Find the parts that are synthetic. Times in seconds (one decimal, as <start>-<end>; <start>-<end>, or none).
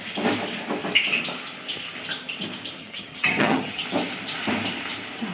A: 2.8-3.8